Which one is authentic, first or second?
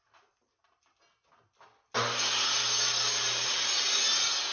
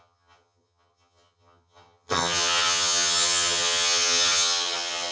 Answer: first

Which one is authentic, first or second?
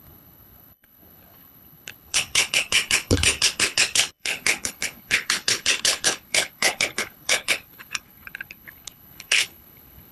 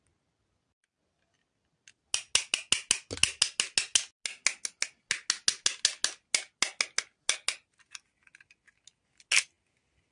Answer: second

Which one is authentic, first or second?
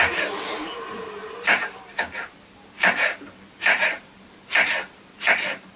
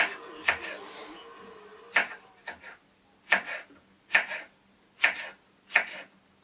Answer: second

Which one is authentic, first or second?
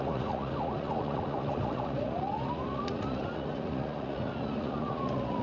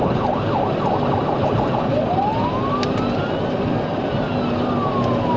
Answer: second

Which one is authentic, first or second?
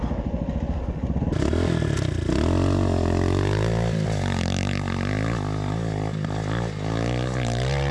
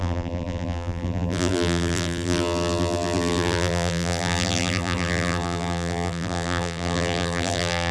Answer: first